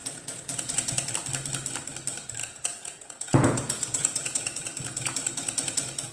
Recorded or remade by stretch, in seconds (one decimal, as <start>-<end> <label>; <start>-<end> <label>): 0.0-1.1 remade; 1.1-2.4 recorded; 2.4-6.1 remade